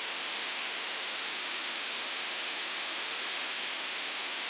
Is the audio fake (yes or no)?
yes